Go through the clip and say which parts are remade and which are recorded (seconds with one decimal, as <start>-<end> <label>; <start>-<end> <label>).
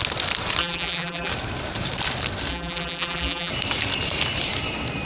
0.0-0.6 recorded; 0.6-1.3 remade; 1.3-2.5 recorded; 2.5-3.5 remade; 3.5-5.1 recorded